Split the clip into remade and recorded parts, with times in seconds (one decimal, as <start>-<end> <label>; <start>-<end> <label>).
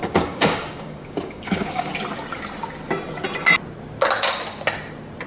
0.0-1.9 remade; 1.9-5.3 recorded